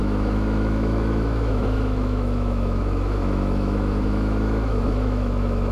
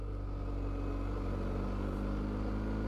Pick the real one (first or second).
second